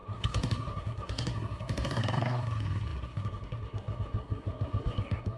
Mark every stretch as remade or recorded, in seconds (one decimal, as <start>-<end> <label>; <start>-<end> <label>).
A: 0.0-5.4 remade